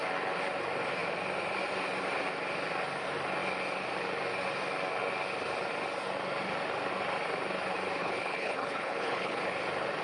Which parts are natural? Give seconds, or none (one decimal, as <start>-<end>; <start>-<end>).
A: 0.0-8.0; 9.4-10.0